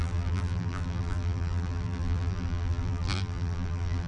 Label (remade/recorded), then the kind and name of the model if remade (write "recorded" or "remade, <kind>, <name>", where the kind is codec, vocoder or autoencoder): remade, vocoder, BigVGAN v2